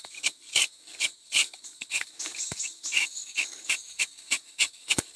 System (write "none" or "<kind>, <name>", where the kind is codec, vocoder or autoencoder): codec, DAC